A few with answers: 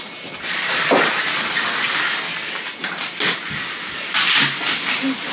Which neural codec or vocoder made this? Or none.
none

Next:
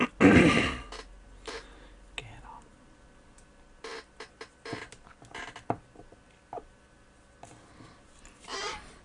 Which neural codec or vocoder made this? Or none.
none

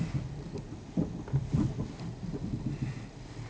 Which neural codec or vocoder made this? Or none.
none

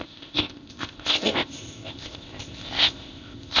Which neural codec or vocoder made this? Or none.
codec, ZipCodec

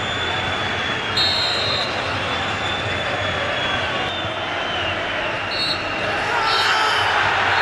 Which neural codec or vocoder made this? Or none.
none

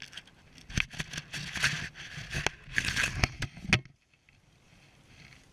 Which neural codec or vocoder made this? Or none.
none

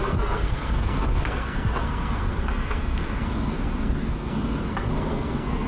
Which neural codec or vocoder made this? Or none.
codec, SNAC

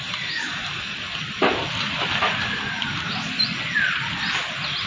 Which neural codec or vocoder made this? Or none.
none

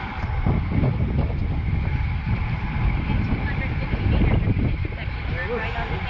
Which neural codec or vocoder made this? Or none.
none